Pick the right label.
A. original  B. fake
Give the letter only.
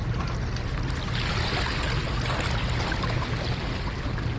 A